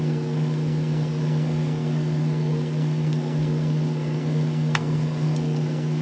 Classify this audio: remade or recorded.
remade